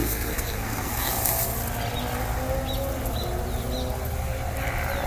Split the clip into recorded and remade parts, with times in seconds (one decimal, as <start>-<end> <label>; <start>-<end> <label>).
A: 0.0-1.1 remade; 1.1-5.1 recorded